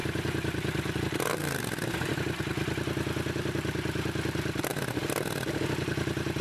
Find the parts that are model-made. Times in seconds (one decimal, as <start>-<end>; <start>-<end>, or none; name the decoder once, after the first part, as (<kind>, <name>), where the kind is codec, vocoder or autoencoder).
0.0-1.0 (vocoder, BigVGAN v2); 1.4-2.1